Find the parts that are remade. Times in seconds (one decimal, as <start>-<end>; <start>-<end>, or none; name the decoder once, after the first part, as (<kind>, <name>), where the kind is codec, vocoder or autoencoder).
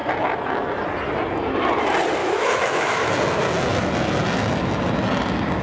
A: 2.2-3.1 (autoencoder, DAC-VAE)